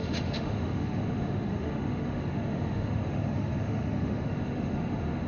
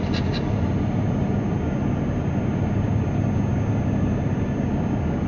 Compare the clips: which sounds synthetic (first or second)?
first